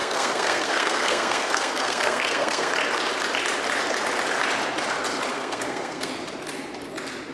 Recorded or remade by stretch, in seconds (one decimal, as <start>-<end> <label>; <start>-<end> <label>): 0.0-2.7 remade; 2.7-5.3 recorded; 5.3-6.1 remade; 6.1-7.3 recorded